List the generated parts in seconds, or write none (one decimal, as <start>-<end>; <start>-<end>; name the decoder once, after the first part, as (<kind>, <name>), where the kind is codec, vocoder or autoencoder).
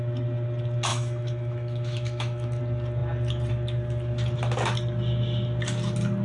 0.9-2.6 (autoencoder, DAC-VAE)